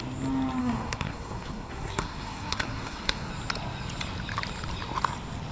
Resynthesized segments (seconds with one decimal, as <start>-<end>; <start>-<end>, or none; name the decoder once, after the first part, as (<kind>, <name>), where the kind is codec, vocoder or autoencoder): 0.6-3.3 (codec, SNAC)